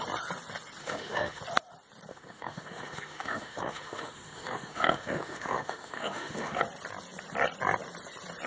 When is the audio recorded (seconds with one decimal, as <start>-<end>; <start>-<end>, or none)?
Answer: 0.0-0.8; 1.4-2.1; 6.6-8.5